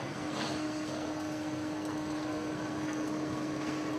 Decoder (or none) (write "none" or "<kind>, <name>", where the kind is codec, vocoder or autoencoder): codec, SNAC